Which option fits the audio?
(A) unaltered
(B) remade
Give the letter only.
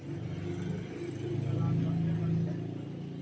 A